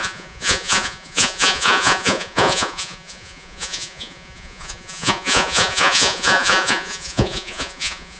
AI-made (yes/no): yes